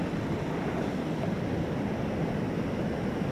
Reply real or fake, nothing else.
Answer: real